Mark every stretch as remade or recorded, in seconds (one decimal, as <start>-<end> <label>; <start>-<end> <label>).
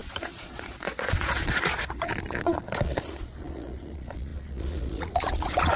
0.0-5.8 remade